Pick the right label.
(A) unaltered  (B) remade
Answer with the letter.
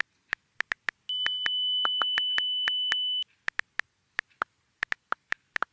A